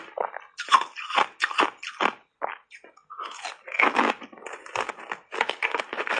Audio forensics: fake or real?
real